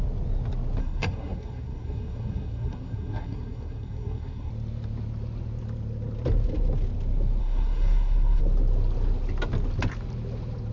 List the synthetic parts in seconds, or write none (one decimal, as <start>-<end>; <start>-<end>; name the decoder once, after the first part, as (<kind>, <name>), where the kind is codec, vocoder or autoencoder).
0.8-4.5 (codec, SNAC); 7.4-8.4

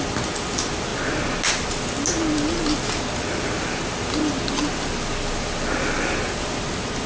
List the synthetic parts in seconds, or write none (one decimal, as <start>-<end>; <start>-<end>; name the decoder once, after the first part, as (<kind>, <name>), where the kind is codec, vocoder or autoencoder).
none

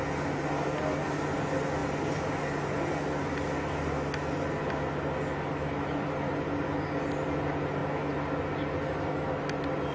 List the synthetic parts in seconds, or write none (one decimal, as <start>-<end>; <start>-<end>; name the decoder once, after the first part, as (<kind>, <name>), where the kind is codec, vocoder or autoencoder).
none

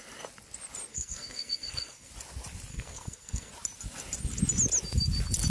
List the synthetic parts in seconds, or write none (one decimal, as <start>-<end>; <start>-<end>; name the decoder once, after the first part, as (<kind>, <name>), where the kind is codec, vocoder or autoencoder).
0.9-2.1 (codec, SNAC); 2.7-3.5

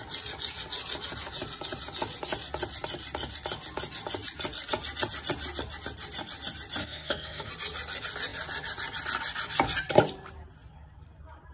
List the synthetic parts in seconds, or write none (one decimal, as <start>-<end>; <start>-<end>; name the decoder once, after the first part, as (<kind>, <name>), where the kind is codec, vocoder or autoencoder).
6.8-7.5 (codec, SNAC)

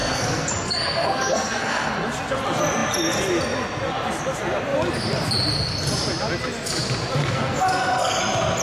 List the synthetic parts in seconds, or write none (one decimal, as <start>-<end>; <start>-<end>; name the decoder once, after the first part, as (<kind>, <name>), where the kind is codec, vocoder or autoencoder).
0.0-1.9 (codec, SNAC); 7.2-8.2